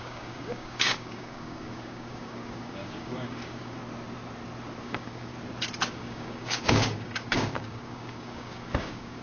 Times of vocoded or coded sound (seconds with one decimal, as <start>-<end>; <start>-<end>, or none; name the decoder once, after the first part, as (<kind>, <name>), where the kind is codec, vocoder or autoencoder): 0.0-3.8 (codec, DAC); 4.8-5.3; 5.9-9.2